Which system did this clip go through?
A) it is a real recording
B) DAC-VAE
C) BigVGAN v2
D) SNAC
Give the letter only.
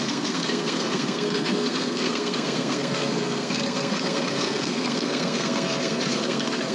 D